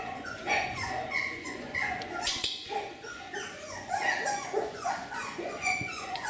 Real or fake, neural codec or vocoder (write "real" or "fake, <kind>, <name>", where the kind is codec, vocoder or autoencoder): fake, vocoder, Vocos